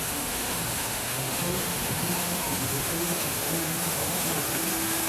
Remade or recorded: remade